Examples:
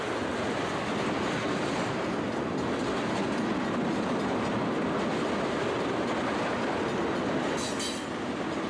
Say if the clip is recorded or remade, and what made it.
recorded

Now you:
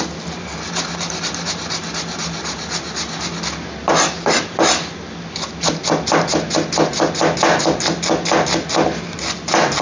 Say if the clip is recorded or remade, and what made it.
recorded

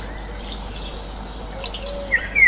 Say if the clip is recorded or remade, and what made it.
recorded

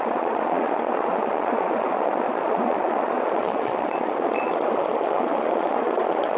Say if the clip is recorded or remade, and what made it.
remade, vocoder, Vocos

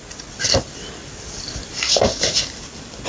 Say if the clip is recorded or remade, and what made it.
recorded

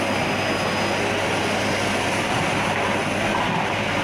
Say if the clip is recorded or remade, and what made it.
recorded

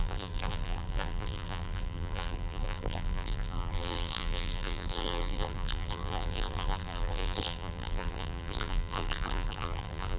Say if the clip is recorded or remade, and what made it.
remade, vocoder, BigVGAN v2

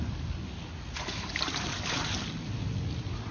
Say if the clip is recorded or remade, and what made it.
recorded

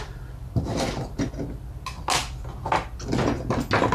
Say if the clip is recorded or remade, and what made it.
recorded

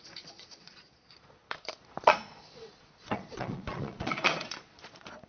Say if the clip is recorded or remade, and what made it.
remade, vocoder, Vocos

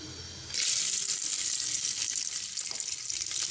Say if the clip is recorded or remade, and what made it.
recorded